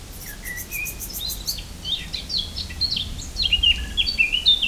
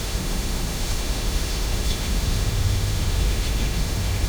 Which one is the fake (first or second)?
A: second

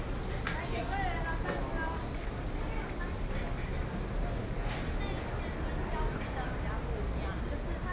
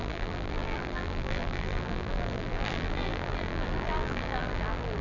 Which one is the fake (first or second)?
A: second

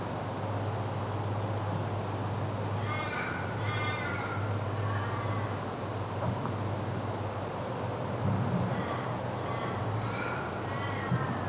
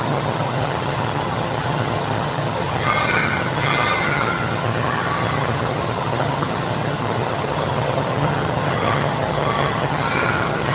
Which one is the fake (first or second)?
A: second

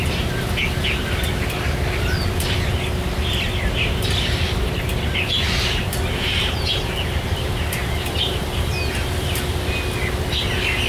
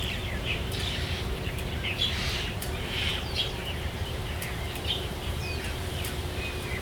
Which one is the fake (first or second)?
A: second